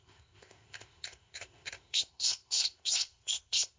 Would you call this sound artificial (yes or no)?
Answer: yes